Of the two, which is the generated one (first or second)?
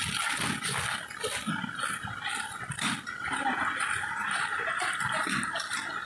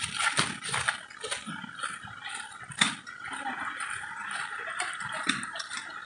second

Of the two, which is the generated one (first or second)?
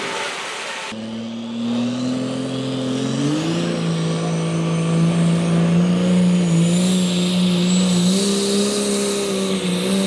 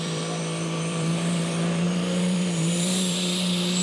second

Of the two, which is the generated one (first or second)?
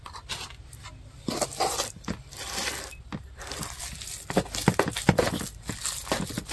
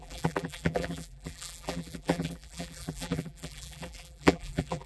second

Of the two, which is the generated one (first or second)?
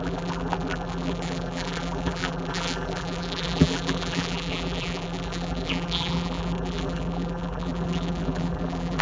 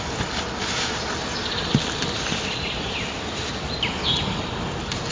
first